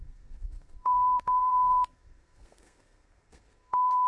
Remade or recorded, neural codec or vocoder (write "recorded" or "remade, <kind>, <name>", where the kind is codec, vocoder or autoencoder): remade, codec, SNAC